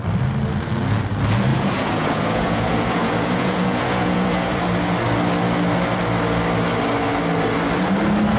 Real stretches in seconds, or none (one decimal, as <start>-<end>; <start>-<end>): 0.0-1.5; 4.6-8.4